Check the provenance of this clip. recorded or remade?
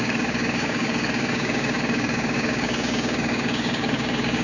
remade